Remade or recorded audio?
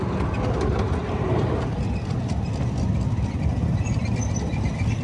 recorded